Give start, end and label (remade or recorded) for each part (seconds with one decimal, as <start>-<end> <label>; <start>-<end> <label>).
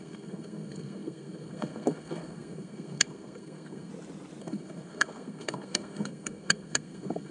0.0-3.9 remade; 3.9-4.4 recorded; 4.4-7.3 remade